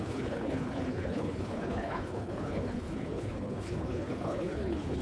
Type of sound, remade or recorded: remade